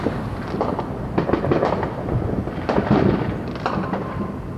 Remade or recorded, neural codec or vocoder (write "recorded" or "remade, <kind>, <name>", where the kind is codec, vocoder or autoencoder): recorded